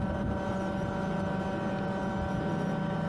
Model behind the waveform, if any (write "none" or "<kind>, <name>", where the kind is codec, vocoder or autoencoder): none